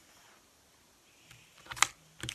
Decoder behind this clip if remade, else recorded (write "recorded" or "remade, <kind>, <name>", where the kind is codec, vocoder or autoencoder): recorded